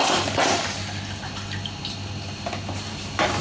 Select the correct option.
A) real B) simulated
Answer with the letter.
A